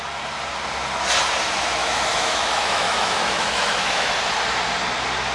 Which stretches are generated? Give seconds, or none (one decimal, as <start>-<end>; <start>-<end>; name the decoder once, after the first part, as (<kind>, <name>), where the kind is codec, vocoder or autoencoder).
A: 1.8-4.1 (autoencoder, DAC-VAE)